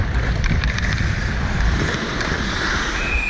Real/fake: fake